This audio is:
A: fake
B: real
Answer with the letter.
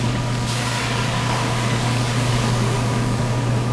A